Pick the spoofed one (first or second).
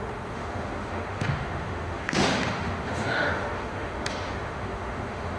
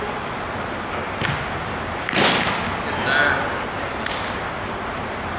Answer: first